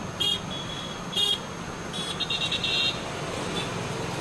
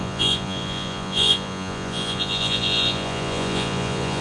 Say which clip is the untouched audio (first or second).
first